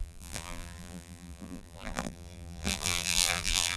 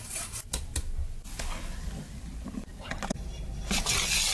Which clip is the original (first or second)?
second